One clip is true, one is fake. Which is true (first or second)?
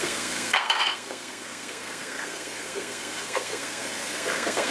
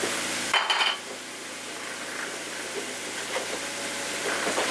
second